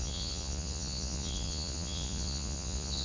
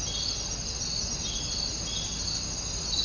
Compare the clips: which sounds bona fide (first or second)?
second